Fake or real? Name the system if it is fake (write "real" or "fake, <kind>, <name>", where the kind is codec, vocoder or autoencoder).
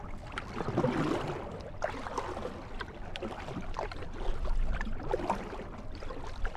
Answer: real